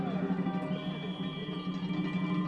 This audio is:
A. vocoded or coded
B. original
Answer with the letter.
B